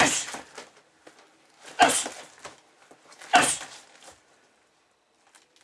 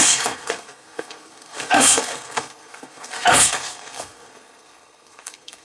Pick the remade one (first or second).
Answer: second